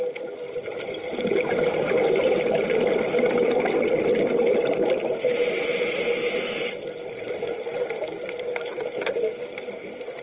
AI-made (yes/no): no